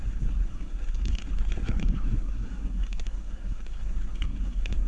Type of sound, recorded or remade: remade